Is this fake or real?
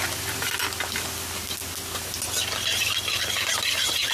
real